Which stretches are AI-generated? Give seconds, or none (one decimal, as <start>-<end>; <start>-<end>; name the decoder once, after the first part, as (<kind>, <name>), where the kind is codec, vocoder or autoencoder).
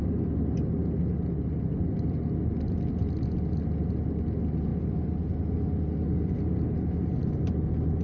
none